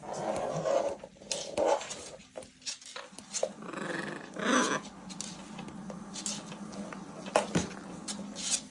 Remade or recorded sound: recorded